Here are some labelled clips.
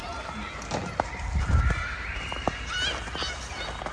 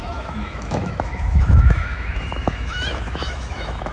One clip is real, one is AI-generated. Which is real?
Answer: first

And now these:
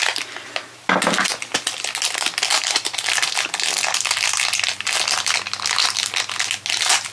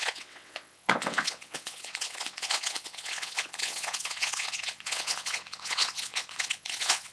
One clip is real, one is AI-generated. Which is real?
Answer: first